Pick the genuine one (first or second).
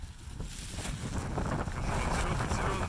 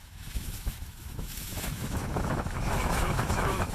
first